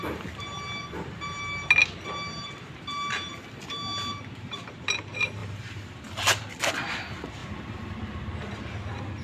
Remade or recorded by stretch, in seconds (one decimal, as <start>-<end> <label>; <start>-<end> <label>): 0.0-5.4 recorded; 5.4-6.7 remade; 6.7-7.4 recorded; 7.4-7.9 remade; 7.9-9.2 recorded